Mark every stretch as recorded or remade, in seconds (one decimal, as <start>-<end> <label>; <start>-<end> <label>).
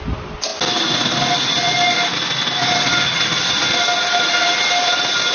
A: 0.0-5.3 recorded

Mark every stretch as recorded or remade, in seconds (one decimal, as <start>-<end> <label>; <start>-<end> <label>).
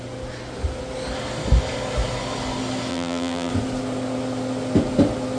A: 0.0-2.9 recorded; 2.9-3.5 remade; 3.5-5.4 recorded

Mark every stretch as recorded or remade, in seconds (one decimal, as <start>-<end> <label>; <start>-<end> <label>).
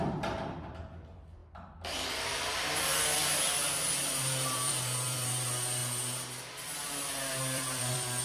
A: 0.0-5.8 remade; 5.8-6.8 recorded; 6.8-8.2 remade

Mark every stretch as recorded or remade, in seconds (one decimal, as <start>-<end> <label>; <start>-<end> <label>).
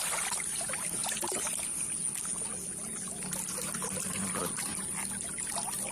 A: 0.0-1.0 recorded; 1.0-1.6 remade; 1.6-5.9 recorded